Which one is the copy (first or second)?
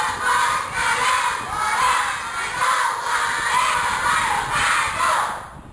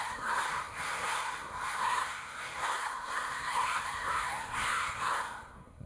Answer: second